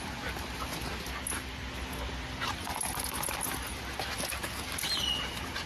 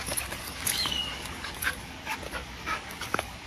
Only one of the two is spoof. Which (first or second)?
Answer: second